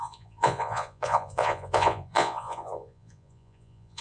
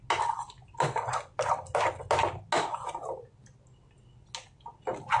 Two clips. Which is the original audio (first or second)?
second